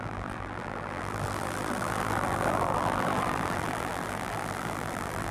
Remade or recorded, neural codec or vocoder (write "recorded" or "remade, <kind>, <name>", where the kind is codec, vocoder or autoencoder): remade, vocoder, BigVGAN v2